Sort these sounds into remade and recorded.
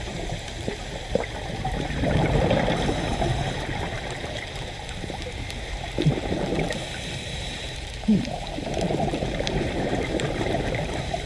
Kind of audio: remade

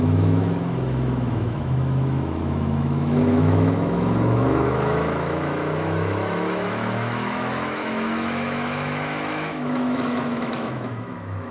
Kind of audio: remade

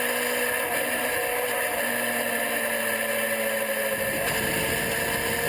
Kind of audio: recorded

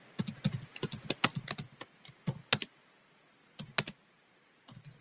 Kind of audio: recorded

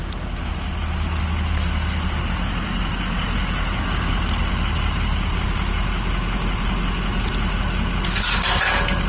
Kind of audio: recorded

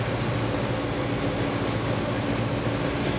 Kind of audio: recorded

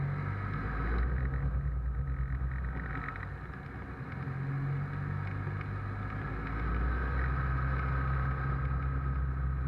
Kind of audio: recorded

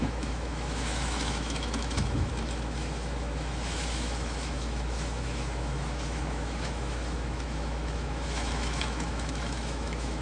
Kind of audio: remade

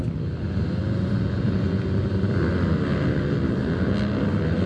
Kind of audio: recorded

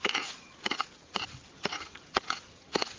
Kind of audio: remade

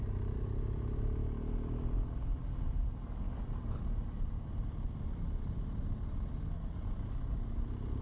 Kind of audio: recorded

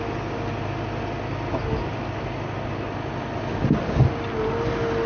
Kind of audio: recorded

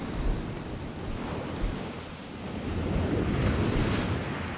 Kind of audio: recorded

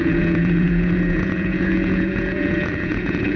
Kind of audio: remade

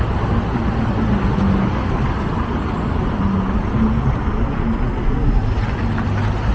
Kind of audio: recorded